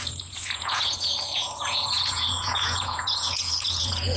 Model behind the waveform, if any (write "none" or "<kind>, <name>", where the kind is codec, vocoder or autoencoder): vocoder, Vocos